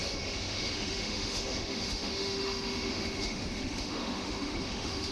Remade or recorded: remade